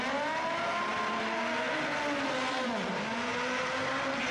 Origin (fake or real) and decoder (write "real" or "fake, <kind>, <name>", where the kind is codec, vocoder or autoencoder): real